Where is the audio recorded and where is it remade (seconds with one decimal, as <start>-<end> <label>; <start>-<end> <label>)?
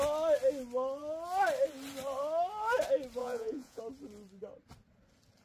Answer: 0.0-3.2 recorded; 3.2-3.8 remade; 3.8-5.4 recorded